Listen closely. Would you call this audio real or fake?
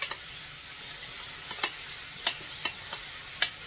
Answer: real